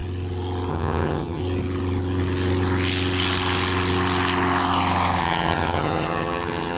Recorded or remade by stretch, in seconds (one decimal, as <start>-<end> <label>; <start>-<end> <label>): 0.0-0.7 recorded; 0.7-1.4 remade; 1.4-5.2 recorded; 5.2-6.8 remade